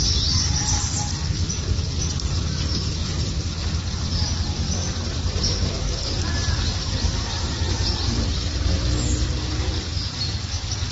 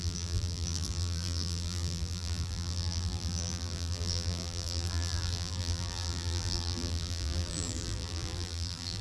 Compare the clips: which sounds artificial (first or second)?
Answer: second